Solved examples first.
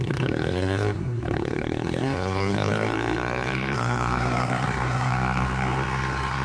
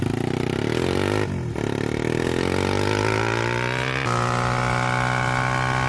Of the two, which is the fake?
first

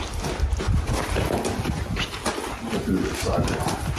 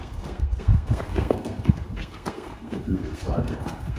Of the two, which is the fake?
second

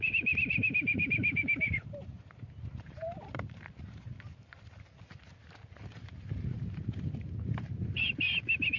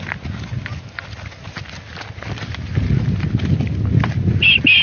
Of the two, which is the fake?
first